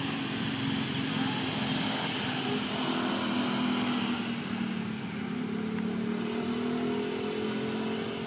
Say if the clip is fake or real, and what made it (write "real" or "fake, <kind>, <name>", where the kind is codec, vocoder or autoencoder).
real